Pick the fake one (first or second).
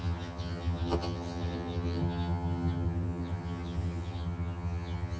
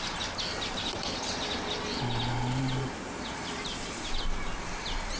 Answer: first